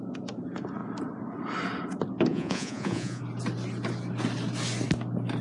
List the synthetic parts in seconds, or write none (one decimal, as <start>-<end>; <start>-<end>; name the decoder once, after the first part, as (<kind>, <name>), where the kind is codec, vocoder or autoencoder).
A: 2.3-3.2 (vocoder, Vocos)

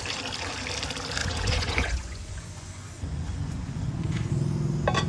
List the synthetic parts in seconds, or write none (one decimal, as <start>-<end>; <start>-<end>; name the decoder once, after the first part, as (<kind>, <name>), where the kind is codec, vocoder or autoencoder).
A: 1.2-4.3 (vocoder, Vocos)

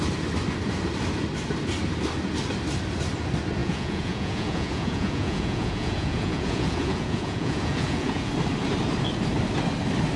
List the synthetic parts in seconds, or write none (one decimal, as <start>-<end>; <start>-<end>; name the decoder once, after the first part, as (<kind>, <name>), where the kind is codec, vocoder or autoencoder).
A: 3.6-8.3 (vocoder, Vocos)

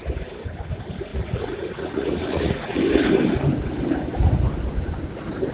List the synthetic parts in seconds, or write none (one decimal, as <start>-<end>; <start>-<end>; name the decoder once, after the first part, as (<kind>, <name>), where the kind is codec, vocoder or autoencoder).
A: 1.1-2.8 (vocoder, Vocos)

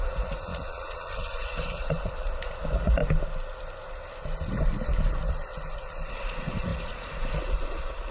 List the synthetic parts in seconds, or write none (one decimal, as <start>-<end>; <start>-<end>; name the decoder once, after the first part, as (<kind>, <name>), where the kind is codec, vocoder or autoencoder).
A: 0.0-3.0 (vocoder, Vocos); 6.1-8.1